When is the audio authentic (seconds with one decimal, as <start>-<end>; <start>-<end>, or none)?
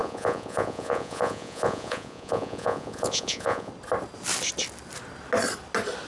3.7-6.1